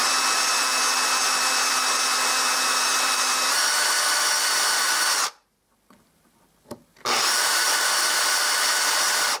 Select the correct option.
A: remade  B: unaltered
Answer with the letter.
B